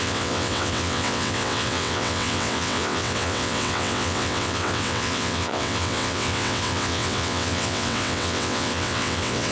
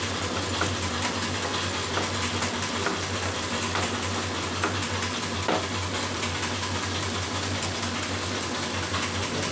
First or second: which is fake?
first